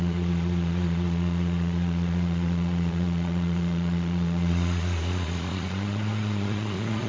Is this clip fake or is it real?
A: fake